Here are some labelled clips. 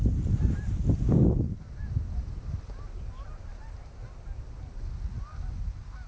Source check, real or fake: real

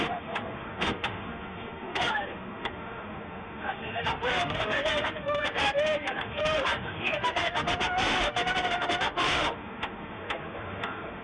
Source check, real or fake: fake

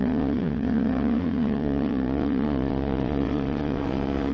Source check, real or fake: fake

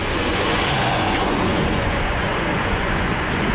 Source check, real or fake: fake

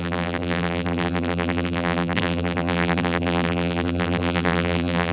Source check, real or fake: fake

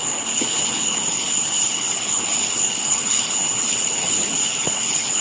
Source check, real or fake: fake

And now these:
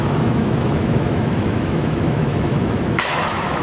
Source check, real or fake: fake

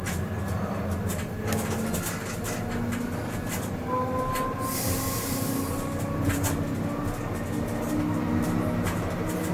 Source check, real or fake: real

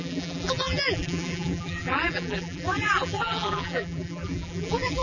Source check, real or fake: fake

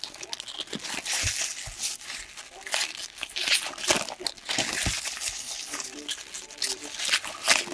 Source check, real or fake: real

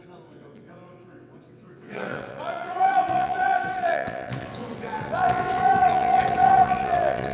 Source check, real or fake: fake